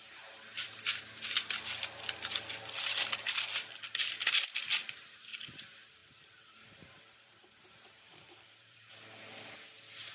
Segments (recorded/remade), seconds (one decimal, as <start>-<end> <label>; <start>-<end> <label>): 0.0-0.5 recorded; 0.5-1.0 remade; 1.0-6.0 recorded; 6.0-8.9 remade; 8.9-10.1 recorded